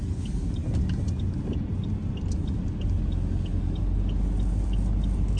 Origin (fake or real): real